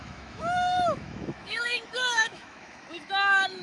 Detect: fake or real fake